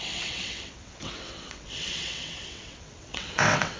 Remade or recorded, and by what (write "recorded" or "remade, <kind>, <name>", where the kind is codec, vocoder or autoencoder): remade, vocoder, WaveNeXt